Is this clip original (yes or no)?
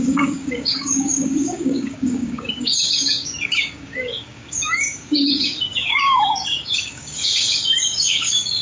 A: no